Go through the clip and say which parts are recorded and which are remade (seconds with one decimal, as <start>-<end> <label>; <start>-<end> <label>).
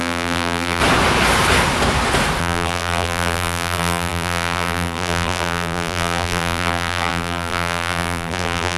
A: 0.0-0.8 remade; 0.8-2.4 recorded; 2.4-8.8 remade